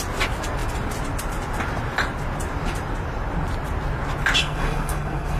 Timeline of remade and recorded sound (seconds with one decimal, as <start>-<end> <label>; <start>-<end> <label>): 0.0-4.4 recorded; 4.4-5.4 remade